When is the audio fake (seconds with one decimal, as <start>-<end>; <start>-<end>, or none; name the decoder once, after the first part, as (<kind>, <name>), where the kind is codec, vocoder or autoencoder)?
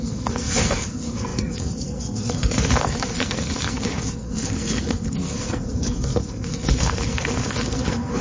0.0-8.2 (codec, SNAC)